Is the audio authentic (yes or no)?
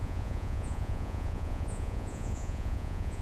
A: no